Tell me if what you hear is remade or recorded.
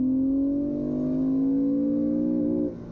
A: recorded